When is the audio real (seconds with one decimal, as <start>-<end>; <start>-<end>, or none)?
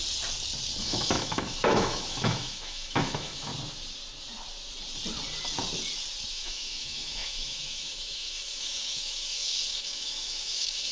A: 0.0-0.8; 3.5-6.3